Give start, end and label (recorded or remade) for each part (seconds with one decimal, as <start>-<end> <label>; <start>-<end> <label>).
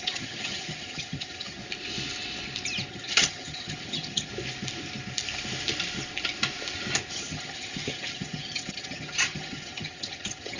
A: 0.0-1.6 remade; 1.6-2.9 recorded; 2.9-4.3 remade; 4.3-7.1 recorded; 7.1-10.6 remade